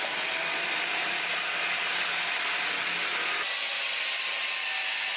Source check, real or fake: real